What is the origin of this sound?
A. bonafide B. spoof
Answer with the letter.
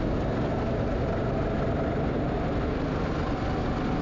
A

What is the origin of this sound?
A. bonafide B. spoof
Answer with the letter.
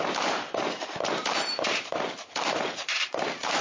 B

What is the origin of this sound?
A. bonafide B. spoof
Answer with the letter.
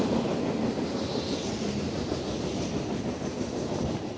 A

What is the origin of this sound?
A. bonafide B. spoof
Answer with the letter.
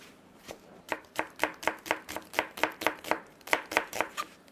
B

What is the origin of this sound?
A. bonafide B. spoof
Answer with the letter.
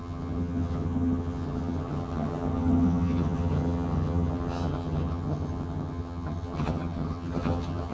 B